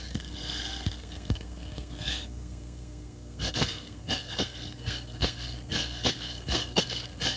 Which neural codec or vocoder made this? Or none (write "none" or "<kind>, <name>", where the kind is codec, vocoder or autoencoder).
codec, SNAC